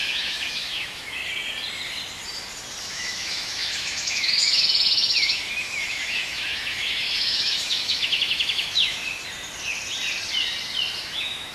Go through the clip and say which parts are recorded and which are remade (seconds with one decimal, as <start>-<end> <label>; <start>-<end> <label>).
0.0-1.2 remade; 1.2-2.8 recorded; 2.8-9.0 remade; 9.0-11.0 recorded; 11.0-11.5 remade